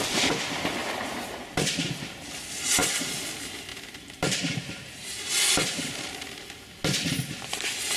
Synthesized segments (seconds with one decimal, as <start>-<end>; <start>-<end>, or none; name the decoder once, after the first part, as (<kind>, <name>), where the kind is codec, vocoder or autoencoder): 0.8-1.9 (vocoder, BigVGAN v2); 3.7-5.9

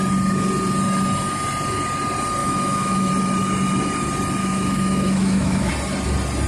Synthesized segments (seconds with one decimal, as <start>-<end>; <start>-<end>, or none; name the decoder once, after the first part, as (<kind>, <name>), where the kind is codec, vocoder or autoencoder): 2.4-3.1 (autoencoder, DAC-VAE); 4.4-5.7

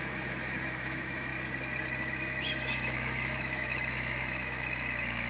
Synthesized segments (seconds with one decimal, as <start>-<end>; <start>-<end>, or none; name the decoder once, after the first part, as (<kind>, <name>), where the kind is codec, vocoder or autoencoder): 0.0-1.3 (autoencoder, DAC-VAE); 2.0-5.3